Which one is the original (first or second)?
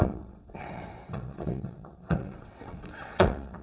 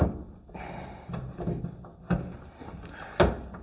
second